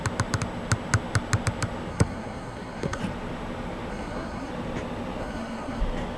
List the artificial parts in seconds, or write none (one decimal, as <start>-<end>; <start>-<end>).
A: 1.9-3.0; 3.9-4.5; 5.2-5.8